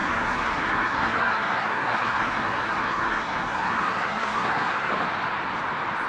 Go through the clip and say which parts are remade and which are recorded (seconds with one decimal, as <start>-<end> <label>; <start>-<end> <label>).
0.0-4.9 remade; 4.9-6.1 recorded